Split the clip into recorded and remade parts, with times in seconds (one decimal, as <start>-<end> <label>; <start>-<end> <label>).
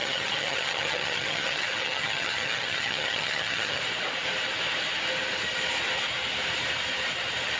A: 0.0-3.8 remade; 3.8-7.6 recorded